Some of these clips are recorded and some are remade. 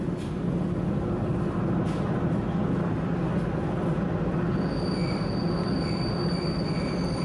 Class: recorded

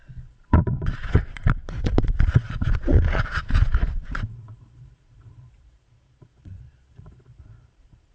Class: remade